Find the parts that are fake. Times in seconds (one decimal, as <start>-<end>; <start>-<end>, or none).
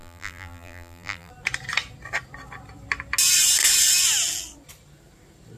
0.0-1.3